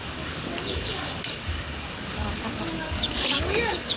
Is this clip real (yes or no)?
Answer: no